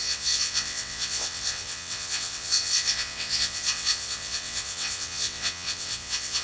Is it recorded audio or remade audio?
remade